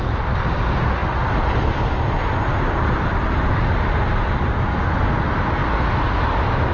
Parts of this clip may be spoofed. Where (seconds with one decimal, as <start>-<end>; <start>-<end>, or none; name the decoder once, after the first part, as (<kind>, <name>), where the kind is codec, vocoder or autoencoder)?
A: none